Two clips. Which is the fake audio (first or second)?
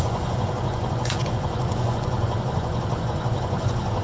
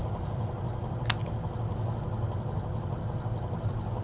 first